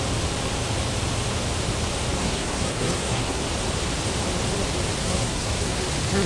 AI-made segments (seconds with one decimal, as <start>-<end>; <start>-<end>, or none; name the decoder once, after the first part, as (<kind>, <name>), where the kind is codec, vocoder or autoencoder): 2.2-3.4 (codec, SNAC); 5.0-5.8